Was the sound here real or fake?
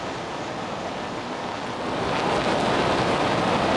real